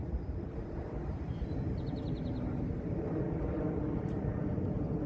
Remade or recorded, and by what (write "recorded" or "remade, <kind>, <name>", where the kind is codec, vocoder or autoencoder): recorded